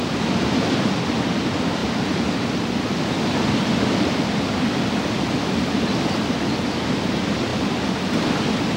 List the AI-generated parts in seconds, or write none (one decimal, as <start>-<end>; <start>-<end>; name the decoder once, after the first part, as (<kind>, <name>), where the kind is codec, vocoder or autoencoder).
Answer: none